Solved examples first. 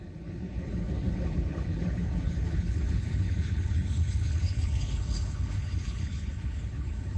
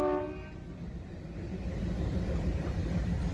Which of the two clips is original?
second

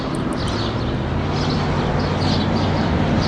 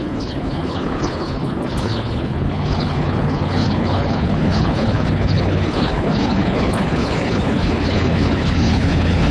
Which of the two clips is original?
first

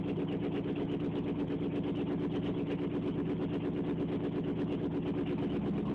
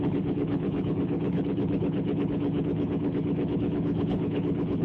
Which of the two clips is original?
first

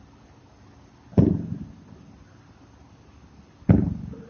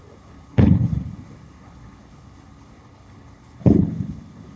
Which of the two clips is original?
first